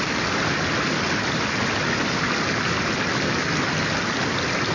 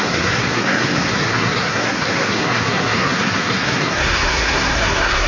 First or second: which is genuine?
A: first